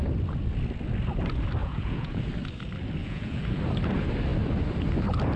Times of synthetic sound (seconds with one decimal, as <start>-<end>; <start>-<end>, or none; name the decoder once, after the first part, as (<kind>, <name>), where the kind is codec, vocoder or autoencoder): 1.6-2.2 (vocoder, Vocos); 3.0-3.6